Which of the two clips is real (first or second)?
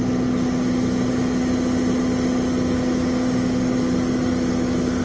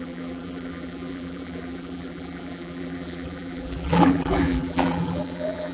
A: first